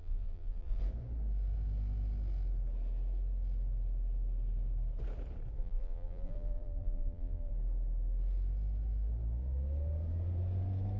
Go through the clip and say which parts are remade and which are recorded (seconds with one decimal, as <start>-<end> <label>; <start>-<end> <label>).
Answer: 0.0-0.8 remade; 0.8-5.6 recorded; 5.6-7.5 remade; 7.5-11.0 recorded